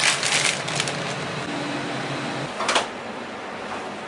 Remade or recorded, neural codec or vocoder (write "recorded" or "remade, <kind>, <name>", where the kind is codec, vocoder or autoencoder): recorded